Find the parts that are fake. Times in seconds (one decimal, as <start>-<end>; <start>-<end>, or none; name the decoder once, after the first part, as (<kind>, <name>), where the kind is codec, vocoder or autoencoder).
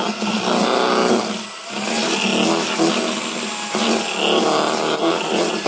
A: none